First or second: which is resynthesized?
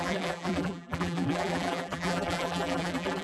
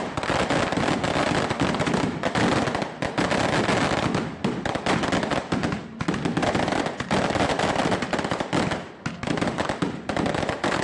first